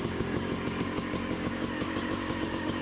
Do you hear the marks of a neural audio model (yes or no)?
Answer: yes